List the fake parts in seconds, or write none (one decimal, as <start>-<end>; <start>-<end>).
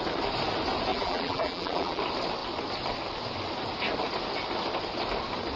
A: 0.9-2.0